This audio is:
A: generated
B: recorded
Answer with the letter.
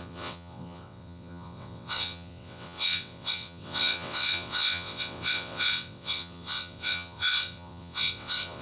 A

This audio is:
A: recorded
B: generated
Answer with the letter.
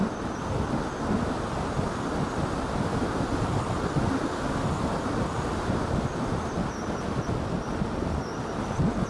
A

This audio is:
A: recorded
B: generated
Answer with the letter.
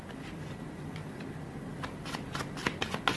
A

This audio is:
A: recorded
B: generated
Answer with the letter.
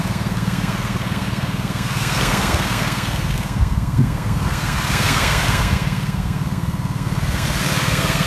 B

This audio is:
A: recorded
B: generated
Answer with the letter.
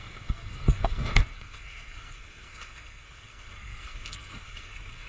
B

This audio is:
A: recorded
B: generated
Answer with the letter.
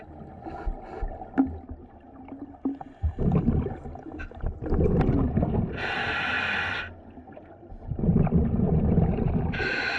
A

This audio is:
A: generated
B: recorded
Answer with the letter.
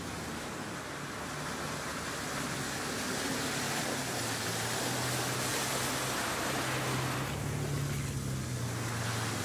B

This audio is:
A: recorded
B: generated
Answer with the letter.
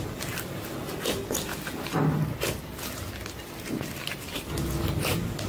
A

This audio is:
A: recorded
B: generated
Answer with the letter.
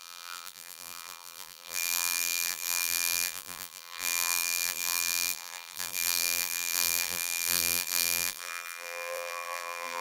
B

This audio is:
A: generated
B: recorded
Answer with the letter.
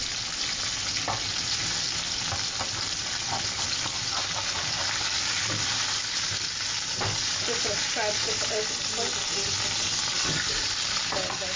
B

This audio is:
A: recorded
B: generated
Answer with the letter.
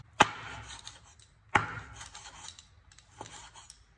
A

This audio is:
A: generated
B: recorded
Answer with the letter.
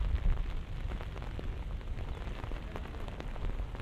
B